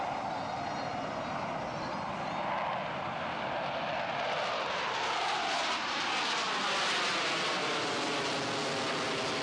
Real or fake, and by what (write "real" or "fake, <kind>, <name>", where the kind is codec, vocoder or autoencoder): real